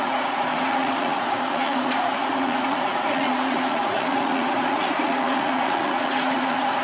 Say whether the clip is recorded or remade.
remade